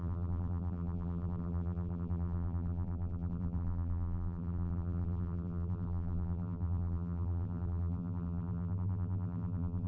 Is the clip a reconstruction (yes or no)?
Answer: yes